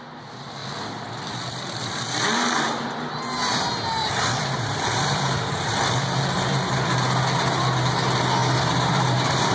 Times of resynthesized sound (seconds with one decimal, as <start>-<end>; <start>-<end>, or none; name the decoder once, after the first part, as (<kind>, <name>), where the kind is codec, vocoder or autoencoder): 0.6-1.9 (vocoder, BigVGAN v2); 4.0-6.2; 8.4-9.5

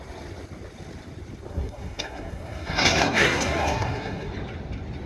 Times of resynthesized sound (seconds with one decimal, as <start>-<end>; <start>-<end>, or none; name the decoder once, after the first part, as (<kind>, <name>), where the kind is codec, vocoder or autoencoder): 1.5-4.3 (codec, SNAC)

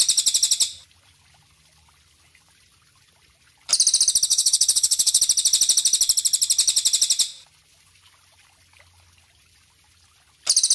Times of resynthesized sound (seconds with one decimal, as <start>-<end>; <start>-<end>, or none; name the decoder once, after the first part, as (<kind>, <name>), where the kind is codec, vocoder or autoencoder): 4.3-5.2 (codec, HILCodec)

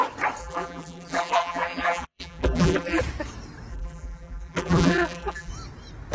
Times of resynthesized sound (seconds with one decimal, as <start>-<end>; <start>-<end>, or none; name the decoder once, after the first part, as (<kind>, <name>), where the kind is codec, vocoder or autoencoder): 0.4-3.0 (vocoder, BigVGAN v2); 3.7-5.5

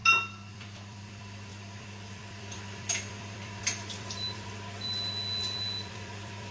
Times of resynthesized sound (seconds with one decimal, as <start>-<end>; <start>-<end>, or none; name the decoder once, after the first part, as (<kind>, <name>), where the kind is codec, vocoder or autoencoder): 0.5-6.5 (vocoder, BigVGAN v2)

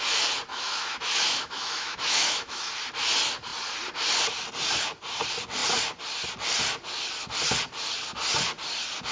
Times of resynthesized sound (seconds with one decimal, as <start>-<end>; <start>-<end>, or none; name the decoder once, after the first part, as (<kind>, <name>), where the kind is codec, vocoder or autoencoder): 0.5-2.7 (autoencoder, DAC-VAE)

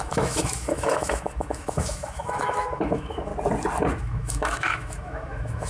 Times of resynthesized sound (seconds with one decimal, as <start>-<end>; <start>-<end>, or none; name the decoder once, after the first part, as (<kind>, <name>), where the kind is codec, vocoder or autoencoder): 0.0-3.3 (autoencoder, DAC-VAE); 4.0-5.7

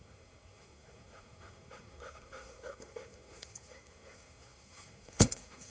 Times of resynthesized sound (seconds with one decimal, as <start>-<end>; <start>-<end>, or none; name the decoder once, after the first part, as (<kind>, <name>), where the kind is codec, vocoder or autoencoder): 0.0-5.7 (codec, SNAC)